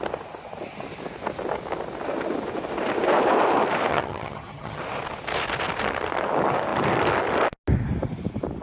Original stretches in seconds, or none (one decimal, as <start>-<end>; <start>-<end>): 0.0-3.9; 4.8-8.6

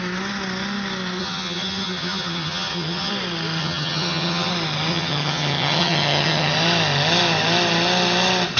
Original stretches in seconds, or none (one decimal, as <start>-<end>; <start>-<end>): 0.0-1.2; 3.1-3.6; 4.5-4.9; 6.5-8.6

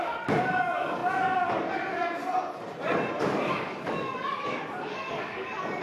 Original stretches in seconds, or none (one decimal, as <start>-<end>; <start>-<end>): 2.2-3.2

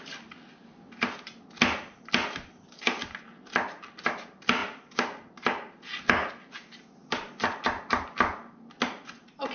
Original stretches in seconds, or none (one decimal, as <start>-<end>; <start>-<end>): 0.0-9.5

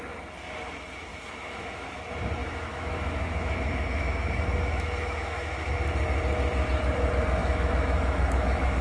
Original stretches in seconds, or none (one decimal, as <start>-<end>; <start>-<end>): 0.0-1.1; 2.0-2.4; 5.7-7.4

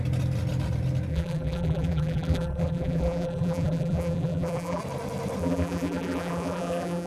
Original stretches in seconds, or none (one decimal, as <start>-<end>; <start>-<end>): 0.0-1.1; 4.8-5.4

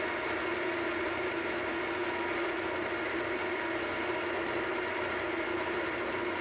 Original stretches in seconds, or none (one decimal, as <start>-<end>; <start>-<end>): 0.0-6.4

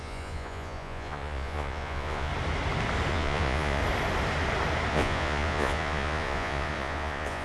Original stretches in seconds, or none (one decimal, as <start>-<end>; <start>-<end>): 2.3-3.1; 3.8-4.9